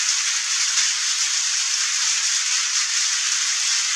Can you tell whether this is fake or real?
real